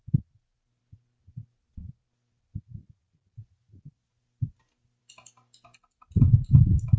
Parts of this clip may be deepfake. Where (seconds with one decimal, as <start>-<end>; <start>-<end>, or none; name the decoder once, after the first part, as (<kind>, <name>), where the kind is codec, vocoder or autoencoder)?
none